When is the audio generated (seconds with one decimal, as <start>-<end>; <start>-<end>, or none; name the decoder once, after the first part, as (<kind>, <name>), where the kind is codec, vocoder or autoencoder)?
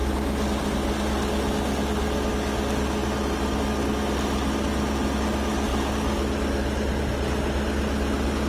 none